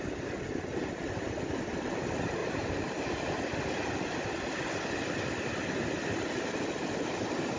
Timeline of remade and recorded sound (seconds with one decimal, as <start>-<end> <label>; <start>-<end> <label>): 0.0-0.7 recorded; 0.7-1.3 remade; 1.3-2.4 recorded; 2.4-3.4 remade; 3.4-7.6 recorded